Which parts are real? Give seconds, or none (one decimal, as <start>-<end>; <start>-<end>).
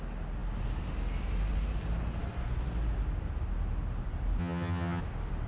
0.0-4.4; 5.0-5.5